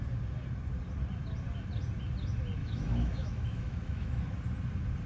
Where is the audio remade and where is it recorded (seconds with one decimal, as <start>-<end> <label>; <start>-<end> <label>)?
0.0-2.6 recorded; 2.6-4.2 remade; 4.2-5.1 recorded